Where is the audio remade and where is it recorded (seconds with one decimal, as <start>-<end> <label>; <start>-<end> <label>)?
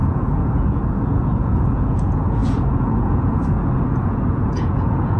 0.0-5.2 remade